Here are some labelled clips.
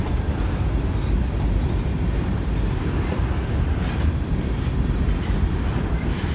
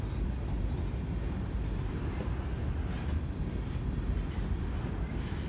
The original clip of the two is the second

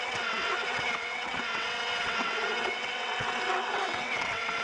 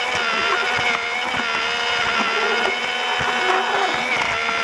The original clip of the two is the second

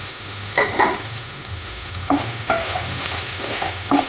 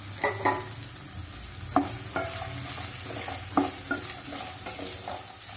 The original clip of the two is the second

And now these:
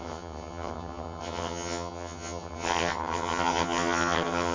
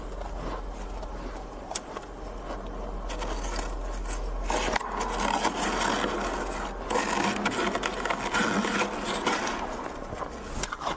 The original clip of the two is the second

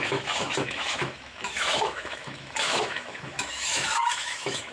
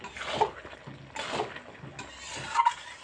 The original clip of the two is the second